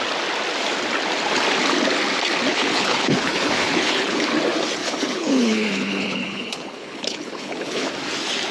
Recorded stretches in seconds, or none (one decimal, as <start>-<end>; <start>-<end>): 0.0-2.5; 4.2-4.8; 7.9-8.5